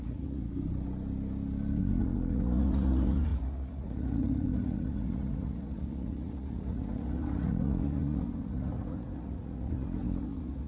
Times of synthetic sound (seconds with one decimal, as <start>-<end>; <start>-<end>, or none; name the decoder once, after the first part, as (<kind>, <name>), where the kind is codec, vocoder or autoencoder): 0.0-0.5 (vocoder, Vocos); 1.8-10.7